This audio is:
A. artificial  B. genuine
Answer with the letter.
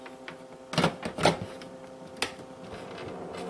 B